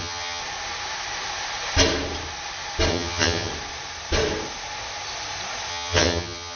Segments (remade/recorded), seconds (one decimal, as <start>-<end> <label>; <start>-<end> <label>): 0.0-0.4 remade; 0.4-2.9 recorded; 2.9-3.5 remade; 3.5-5.7 recorded; 5.7-6.6 remade